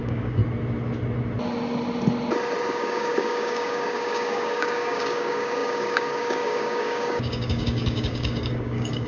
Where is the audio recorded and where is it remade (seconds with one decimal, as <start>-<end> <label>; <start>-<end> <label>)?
0.0-0.4 remade; 0.4-2.7 recorded; 2.7-9.1 remade

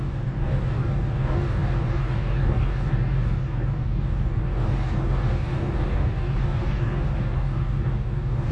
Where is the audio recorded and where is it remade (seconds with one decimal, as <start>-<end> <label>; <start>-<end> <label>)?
0.0-8.5 remade

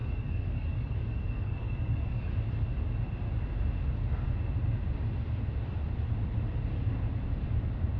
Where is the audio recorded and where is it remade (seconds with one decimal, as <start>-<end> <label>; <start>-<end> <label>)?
0.0-2.3 remade; 2.3-8.0 recorded

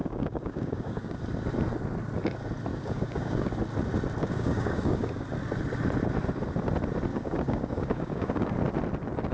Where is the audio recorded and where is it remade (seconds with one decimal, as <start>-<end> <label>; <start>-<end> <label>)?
0.0-1.2 remade; 1.2-2.7 recorded; 2.7-3.5 remade; 3.5-4.2 recorded; 4.2-5.1 remade; 5.1-7.1 recorded; 7.1-8.5 remade; 8.5-9.3 recorded

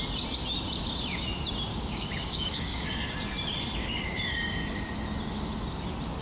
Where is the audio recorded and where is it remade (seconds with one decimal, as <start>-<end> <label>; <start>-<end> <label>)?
0.0-1.7 recorded; 1.7-3.1 remade; 3.1-3.8 recorded; 3.8-4.5 remade; 4.5-6.2 recorded

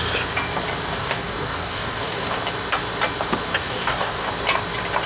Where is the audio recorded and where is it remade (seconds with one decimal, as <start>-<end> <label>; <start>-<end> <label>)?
0.0-1.0 recorded; 1.0-2.4 remade; 2.4-3.6 recorded; 3.6-4.3 remade; 4.3-5.1 recorded

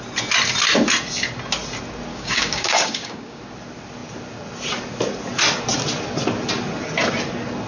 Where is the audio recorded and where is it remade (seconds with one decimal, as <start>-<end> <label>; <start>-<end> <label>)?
0.0-2.1 recorded; 2.1-3.4 remade; 3.4-7.7 recorded

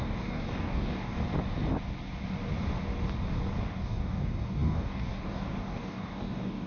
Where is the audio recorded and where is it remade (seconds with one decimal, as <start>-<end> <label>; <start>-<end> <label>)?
0.0-1.2 remade; 1.2-3.6 recorded; 3.6-6.7 remade